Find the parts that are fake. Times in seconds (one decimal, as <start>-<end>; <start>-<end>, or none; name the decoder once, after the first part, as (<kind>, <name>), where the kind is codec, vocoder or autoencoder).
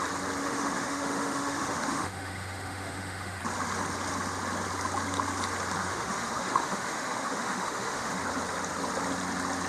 0.4-3.4 (autoencoder, DAC-VAE); 5.8-8.2